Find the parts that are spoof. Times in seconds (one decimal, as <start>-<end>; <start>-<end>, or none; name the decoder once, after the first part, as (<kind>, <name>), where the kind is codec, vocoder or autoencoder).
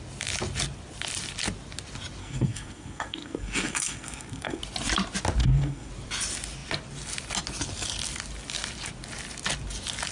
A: 2.2-4.6 (codec, SNAC); 5.4-5.9